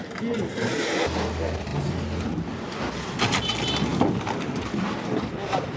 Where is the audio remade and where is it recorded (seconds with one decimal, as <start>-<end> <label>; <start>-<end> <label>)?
0.0-5.8 recorded

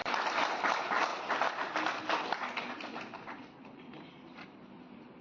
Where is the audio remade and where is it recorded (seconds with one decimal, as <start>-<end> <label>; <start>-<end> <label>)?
0.0-5.2 recorded

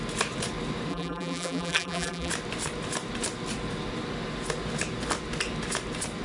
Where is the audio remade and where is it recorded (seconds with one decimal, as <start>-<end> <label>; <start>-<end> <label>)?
0.0-0.9 recorded; 0.9-2.3 remade; 2.3-6.2 recorded

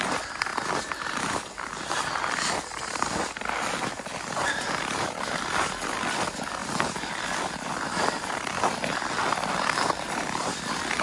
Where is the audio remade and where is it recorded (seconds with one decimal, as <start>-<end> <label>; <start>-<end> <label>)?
0.0-11.0 remade